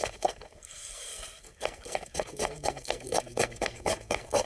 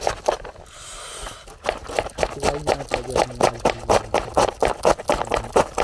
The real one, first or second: second